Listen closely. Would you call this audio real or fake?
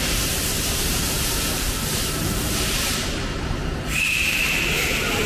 fake